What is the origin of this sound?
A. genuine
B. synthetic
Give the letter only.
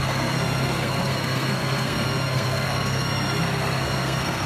B